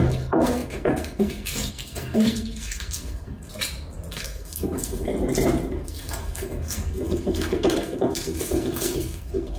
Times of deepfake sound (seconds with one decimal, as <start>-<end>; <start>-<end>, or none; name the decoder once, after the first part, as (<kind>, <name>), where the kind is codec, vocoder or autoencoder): 0.0-3.5 (codec, SNAC); 4.1-5.1; 5.7-9.6